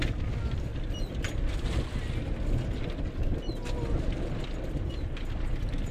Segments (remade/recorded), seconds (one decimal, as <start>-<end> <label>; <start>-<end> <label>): 0.0-5.9 recorded